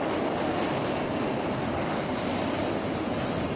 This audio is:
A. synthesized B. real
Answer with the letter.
A